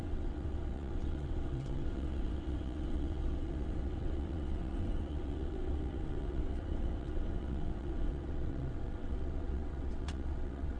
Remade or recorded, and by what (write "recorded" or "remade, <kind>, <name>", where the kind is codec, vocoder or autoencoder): remade, vocoder, WaveNeXt